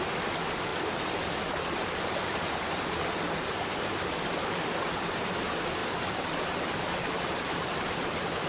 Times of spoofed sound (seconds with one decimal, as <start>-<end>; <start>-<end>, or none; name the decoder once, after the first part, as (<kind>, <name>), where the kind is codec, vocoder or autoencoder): 0.0-0.7 (vocoder, BigVGAN v2); 3.7-8.5